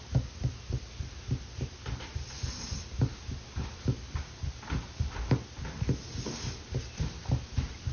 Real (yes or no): yes